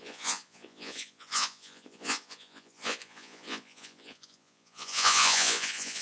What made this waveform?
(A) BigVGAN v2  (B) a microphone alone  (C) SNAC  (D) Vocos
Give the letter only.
D